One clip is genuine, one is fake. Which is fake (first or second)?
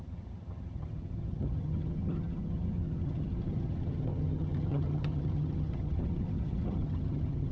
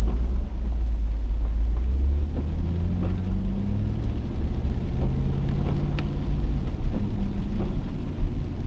first